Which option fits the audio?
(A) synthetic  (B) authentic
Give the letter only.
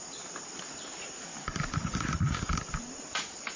B